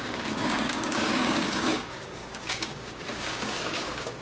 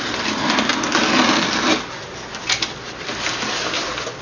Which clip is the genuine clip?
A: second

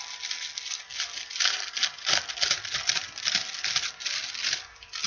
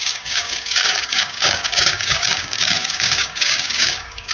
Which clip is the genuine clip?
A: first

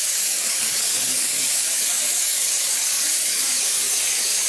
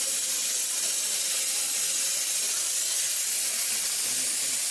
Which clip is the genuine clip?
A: second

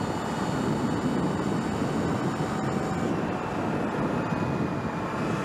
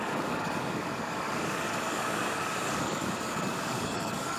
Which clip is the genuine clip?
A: first